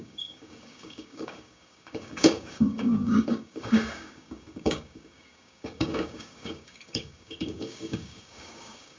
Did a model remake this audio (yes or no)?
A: yes